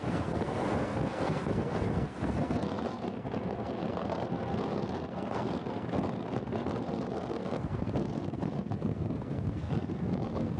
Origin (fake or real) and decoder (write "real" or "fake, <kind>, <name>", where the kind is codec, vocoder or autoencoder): fake, codec, SNAC